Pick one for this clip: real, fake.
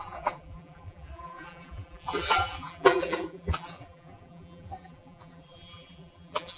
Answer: fake